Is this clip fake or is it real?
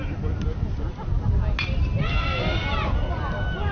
real